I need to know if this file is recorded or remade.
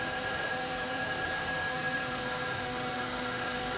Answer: remade